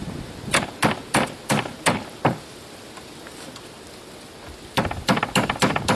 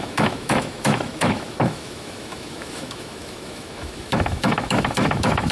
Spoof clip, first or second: second